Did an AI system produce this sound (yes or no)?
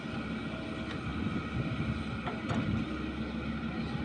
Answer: no